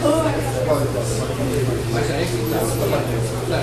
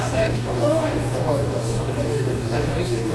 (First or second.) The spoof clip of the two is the second